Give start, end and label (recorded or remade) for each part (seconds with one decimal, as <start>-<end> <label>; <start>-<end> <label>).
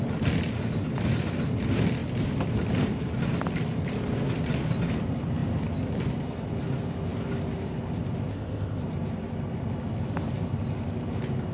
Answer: 0.0-8.3 recorded; 8.3-8.8 remade; 8.8-11.5 recorded